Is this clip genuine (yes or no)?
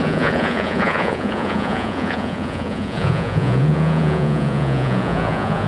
no